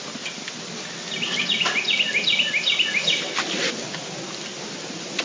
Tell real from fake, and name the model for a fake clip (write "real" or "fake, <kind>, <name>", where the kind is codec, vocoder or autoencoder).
real